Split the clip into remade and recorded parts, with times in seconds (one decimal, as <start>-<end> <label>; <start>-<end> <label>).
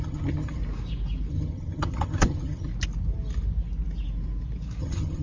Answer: 0.0-0.6 remade; 0.6-1.3 recorded; 1.3-2.7 remade; 2.7-4.8 recorded; 4.8-5.2 remade